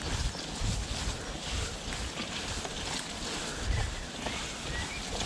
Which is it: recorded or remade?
recorded